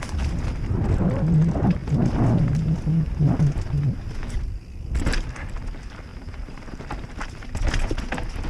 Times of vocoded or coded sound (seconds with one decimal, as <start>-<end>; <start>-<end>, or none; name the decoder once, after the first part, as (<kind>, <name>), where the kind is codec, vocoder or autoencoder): 6.1-7.1 (vocoder, BigVGAN v2)